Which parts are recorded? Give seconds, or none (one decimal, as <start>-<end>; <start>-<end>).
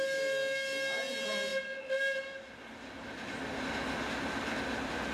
0.0-5.1